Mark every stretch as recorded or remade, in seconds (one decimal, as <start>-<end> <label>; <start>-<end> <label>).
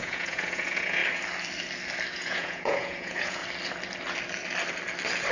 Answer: 0.0-1.0 remade; 1.0-2.1 recorded; 2.1-3.4 remade; 3.4-5.3 recorded